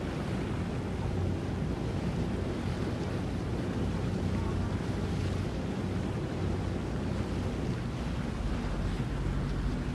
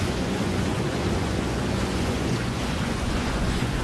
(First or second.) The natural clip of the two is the first